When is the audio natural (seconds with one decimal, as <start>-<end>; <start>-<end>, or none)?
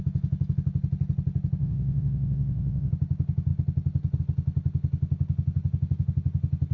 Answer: 0.0-1.6; 2.9-6.7